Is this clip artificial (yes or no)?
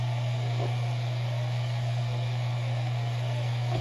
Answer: yes